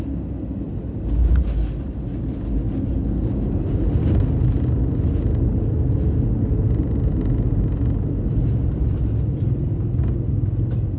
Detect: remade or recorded recorded